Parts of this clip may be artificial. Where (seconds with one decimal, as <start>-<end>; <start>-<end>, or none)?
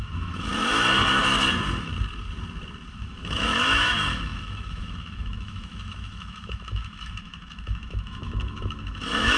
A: 0.0-0.5; 2.9-9.4